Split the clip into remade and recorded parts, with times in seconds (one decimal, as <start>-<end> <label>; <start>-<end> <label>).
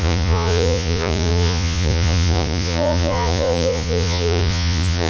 0.0-5.1 remade